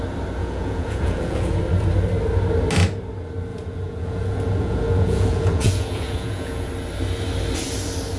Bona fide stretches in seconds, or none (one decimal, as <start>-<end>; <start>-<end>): 0.0-0.4; 1.6-3.5; 6.7-8.2